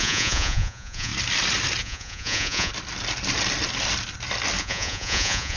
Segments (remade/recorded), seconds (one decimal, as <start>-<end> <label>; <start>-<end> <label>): 0.0-1.1 remade; 1.1-1.8 recorded; 1.8-2.7 remade; 2.7-4.6 recorded; 4.6-5.6 remade